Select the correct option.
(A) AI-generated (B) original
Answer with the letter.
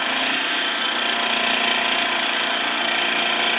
B